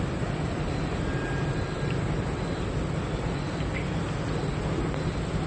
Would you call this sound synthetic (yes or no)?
no